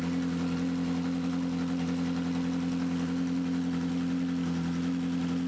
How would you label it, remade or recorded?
recorded